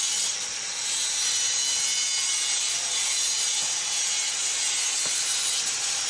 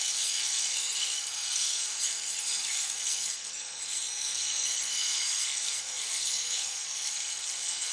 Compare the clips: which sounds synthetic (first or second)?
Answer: second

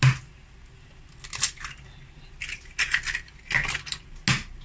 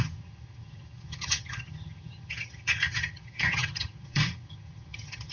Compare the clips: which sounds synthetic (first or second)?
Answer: second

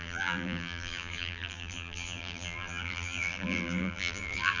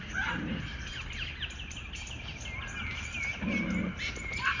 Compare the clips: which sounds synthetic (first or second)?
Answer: first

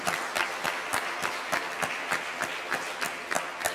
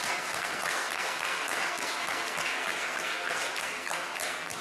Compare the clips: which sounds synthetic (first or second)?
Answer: second